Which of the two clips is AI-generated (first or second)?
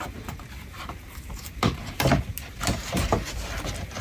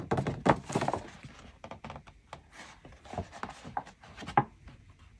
first